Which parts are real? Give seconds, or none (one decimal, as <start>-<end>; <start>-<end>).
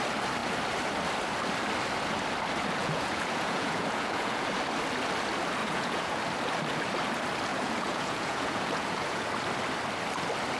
0.0-2.8; 4.5-5.6; 6.2-7.5; 9.3-10.6